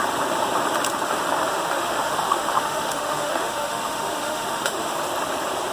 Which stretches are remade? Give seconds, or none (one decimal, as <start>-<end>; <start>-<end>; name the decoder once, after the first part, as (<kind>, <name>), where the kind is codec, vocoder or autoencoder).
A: 1.5-4.9 (autoencoder, DAC-VAE)